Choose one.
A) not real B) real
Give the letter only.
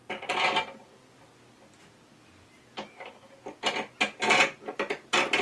B